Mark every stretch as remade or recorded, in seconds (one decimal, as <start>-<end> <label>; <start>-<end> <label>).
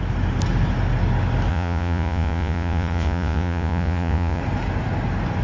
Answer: 0.0-1.5 recorded; 1.5-4.4 remade; 4.4-5.4 recorded